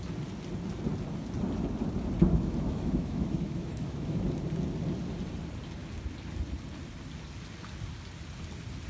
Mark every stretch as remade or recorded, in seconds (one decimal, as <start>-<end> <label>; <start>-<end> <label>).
0.0-2.3 recorded; 2.3-4.2 remade; 4.2-8.9 recorded